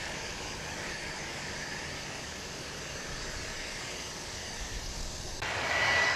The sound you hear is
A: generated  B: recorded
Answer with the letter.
A